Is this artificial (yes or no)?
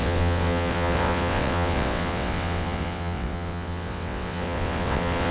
yes